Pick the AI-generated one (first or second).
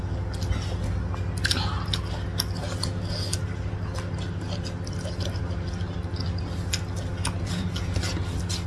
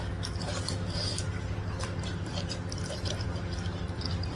second